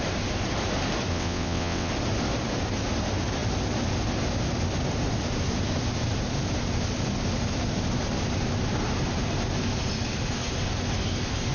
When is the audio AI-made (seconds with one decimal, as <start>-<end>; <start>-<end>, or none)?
1.1-1.9